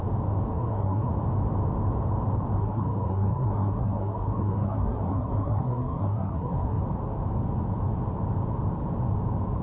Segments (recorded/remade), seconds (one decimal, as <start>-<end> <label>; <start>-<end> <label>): 0.0-0.5 recorded; 0.5-1.1 remade; 1.1-2.6 recorded; 2.6-6.8 remade; 6.8-9.6 recorded

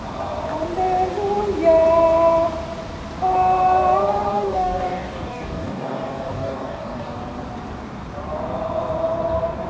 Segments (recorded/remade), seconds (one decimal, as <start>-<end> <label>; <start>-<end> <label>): 0.0-4.3 recorded; 4.3-7.2 remade; 7.2-9.7 recorded

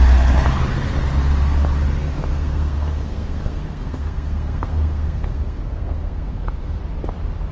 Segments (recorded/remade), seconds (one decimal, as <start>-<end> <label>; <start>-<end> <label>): 0.0-2.3 recorded; 2.3-6.8 remade; 6.8-7.5 recorded

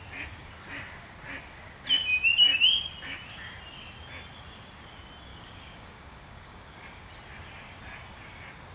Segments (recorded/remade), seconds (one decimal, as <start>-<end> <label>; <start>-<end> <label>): 0.0-5.3 recorded; 5.3-7.1 remade; 7.1-8.7 recorded

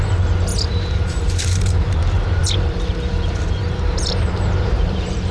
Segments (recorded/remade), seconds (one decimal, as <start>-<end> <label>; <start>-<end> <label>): 0.0-0.5 recorded; 0.5-2.0 remade; 2.0-2.4 recorded; 2.4-5.3 remade

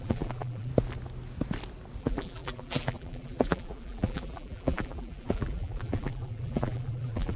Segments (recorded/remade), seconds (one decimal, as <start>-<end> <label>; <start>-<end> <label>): 0.0-0.7 remade; 0.7-2.0 recorded; 2.0-7.4 remade

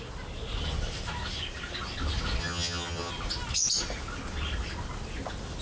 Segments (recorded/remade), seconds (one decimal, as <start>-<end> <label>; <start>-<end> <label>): 0.0-2.4 recorded; 2.4-3.1 remade; 3.1-5.6 recorded